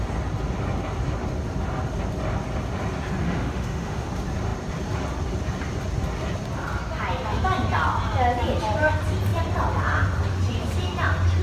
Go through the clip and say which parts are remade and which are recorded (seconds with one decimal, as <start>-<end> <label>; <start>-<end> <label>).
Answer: 0.0-3.2 recorded; 3.2-4.1 remade; 4.1-11.4 recorded